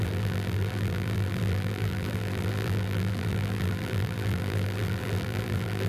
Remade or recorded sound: remade